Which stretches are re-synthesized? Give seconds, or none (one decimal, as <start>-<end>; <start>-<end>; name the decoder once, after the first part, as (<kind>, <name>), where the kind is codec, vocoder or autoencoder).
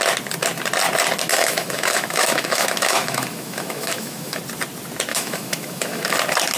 1.3-4.4 (autoencoder, DAC-VAE); 5.1-6.1